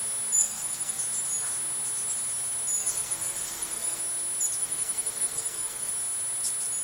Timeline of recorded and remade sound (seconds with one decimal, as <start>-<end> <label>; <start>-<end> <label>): 0.0-0.4 recorded; 0.4-1.0 remade; 1.0-2.8 recorded; 2.8-4.0 remade; 4.0-4.6 recorded; 4.6-5.9 remade; 5.9-6.8 recorded